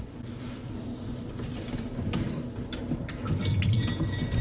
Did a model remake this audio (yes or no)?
no